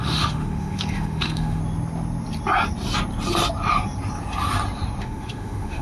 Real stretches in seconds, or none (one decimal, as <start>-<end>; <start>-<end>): 1.6-5.0